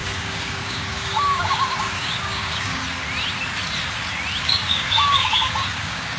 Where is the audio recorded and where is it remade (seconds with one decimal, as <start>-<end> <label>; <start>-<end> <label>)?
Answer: 0.0-2.8 remade; 2.8-4.4 recorded; 4.4-6.2 remade